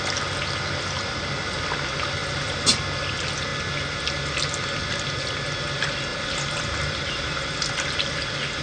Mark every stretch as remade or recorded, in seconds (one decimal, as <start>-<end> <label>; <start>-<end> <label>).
0.0-2.2 recorded; 2.2-2.8 remade; 2.8-6.1 recorded; 6.1-7.7 remade; 7.7-8.6 recorded